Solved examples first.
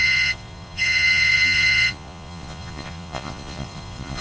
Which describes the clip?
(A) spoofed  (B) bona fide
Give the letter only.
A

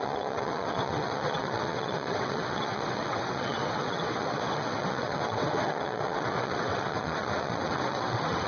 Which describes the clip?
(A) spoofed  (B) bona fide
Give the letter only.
A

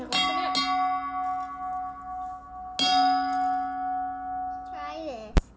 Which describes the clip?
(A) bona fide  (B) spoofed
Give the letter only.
A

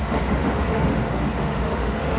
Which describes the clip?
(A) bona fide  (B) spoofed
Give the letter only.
B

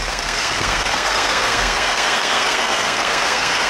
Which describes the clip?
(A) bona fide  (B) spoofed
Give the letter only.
B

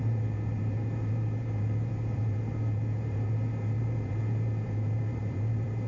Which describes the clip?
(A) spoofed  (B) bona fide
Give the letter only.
A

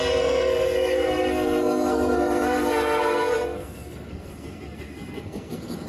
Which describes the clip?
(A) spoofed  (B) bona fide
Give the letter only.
A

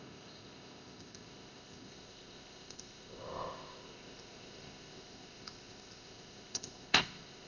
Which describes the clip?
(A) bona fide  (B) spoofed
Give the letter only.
B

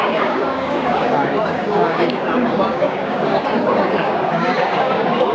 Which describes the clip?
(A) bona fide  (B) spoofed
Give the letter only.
B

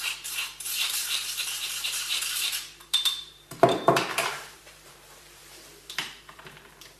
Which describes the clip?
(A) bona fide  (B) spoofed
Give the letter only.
B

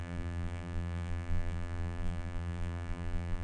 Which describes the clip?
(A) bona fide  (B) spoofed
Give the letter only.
B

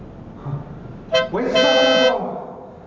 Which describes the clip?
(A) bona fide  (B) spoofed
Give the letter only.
A